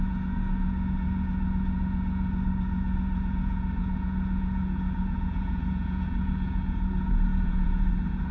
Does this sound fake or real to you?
fake